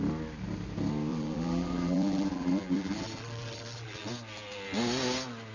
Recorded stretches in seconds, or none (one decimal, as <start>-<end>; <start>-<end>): 0.0-1.1; 4.1-5.5